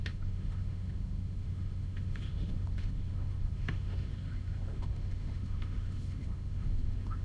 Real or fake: fake